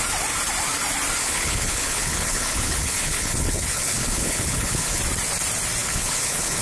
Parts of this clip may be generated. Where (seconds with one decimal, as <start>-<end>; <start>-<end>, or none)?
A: 1.2-5.0; 5.8-6.6